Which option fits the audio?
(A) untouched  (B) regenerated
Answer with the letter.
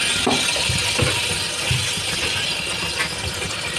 A